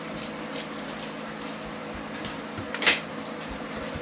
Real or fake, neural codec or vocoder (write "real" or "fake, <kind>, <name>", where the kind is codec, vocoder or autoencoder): real